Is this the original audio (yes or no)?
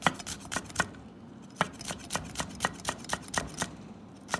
yes